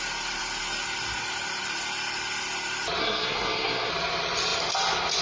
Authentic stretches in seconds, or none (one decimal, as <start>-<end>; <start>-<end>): 0.0-3.0; 3.9-5.2